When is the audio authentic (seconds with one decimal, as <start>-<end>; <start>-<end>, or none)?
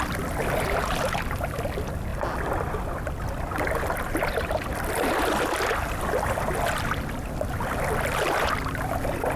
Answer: 0.0-9.4